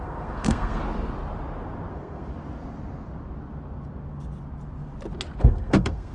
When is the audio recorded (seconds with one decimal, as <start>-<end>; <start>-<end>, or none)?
0.8-1.9; 2.3-5.4